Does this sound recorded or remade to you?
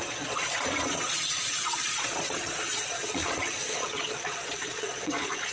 remade